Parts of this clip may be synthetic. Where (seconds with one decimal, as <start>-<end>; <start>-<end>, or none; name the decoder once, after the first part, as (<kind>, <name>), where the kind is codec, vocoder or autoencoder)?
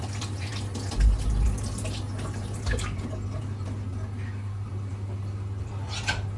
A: none